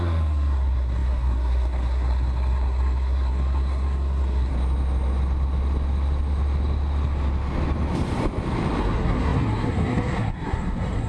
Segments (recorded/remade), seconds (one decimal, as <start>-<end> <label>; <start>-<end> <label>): 0.0-4.5 remade; 4.5-8.8 recorded; 8.8-11.1 remade